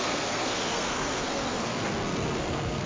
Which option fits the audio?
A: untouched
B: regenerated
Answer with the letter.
B